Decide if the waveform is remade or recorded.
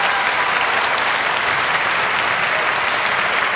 recorded